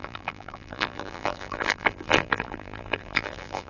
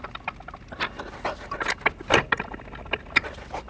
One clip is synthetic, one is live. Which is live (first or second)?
second